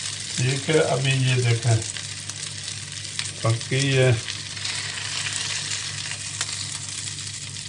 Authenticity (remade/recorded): recorded